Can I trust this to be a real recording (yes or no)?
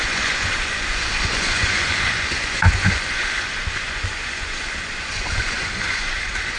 no